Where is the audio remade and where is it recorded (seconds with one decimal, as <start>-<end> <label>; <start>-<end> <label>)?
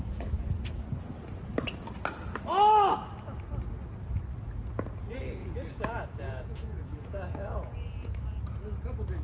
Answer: 0.0-5.4 recorded; 5.4-8.1 remade; 8.1-9.2 recorded